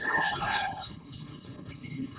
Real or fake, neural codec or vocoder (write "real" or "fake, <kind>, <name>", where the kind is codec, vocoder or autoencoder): fake, codec, HILCodec